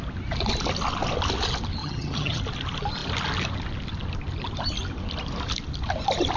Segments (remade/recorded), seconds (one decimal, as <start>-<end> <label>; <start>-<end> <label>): 0.0-1.8 recorded; 1.8-2.4 remade; 2.4-6.4 recorded